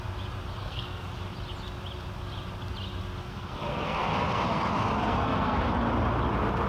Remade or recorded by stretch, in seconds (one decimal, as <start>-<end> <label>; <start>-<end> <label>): 0.0-0.6 recorded; 0.6-1.1 remade; 1.1-3.2 recorded; 3.2-5.6 remade; 5.6-6.7 recorded